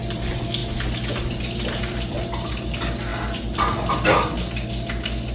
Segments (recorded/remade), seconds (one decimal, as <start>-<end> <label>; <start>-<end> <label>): 0.0-5.3 recorded